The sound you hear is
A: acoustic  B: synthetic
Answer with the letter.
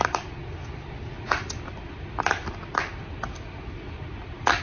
A